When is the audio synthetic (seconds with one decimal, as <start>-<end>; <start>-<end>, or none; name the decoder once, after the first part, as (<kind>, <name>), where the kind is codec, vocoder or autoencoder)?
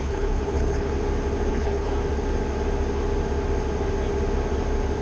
0.0-0.9 (codec, HILCodec); 1.5-1.9